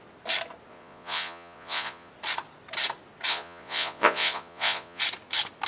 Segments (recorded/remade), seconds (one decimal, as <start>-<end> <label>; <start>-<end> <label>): 0.0-0.7 recorded; 0.7-2.1 remade; 2.1-3.3 recorded; 3.3-5.0 remade; 5.0-5.7 recorded